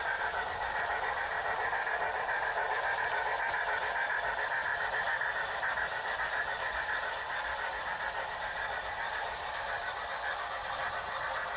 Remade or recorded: recorded